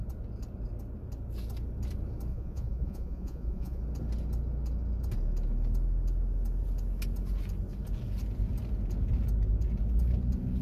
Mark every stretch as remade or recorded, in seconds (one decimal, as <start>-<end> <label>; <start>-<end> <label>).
0.0-2.3 recorded; 2.3-3.8 remade; 3.8-10.6 recorded